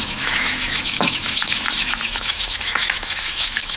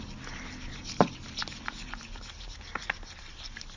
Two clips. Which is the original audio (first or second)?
second